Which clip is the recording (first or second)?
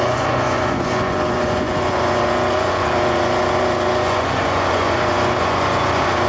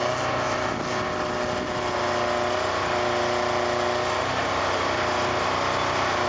second